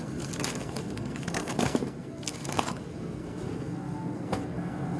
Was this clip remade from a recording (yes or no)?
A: yes